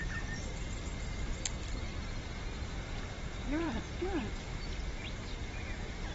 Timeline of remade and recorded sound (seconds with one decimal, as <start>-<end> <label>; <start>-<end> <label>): 0.0-2.3 recorded; 2.3-6.1 remade